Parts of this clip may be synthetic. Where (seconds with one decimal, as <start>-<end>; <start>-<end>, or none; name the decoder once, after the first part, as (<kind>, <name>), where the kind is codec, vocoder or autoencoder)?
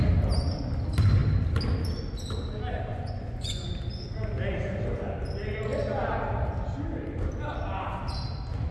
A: 2.9-3.7 (vocoder, Vocos)